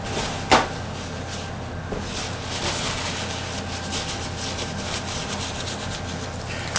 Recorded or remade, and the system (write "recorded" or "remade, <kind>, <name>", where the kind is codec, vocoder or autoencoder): recorded